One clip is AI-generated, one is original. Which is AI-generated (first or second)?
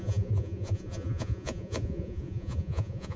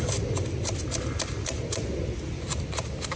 first